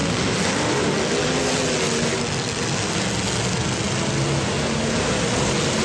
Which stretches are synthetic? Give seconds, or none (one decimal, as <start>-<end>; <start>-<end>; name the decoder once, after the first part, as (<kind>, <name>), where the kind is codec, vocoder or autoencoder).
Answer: none